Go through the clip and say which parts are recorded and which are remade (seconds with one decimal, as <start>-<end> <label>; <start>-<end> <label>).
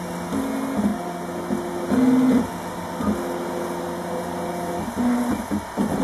0.0-6.0 recorded